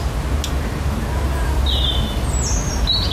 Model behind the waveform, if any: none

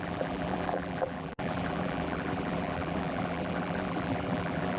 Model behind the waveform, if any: vocoder, BigVGAN v2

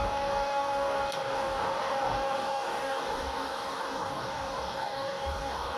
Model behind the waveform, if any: codec, DAC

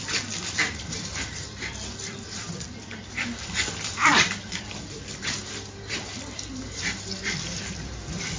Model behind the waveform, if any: vocoder, BigVGAN v2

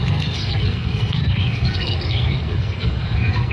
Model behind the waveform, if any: codec, SNAC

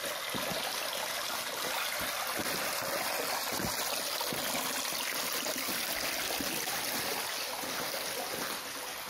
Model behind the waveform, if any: none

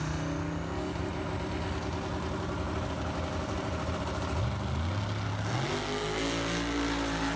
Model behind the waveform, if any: none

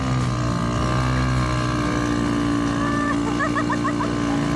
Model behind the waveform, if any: none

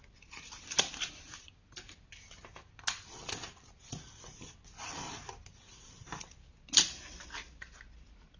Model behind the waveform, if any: none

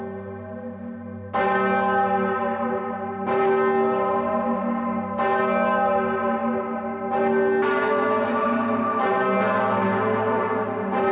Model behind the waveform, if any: none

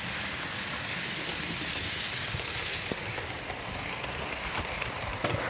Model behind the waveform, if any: vocoder, BigVGAN v2